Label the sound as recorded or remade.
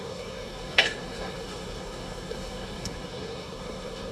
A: remade